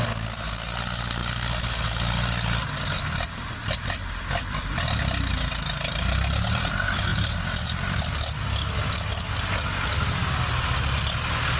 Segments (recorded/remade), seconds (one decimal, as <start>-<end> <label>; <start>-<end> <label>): 0.0-11.6 recorded

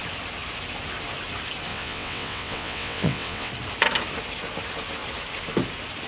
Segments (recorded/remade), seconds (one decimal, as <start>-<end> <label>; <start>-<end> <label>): 0.0-1.7 recorded; 1.7-3.5 remade; 3.5-6.1 recorded

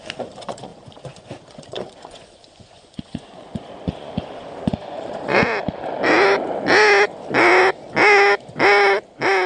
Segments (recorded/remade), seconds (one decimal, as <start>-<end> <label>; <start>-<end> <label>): 0.0-5.3 remade; 5.3-9.5 recorded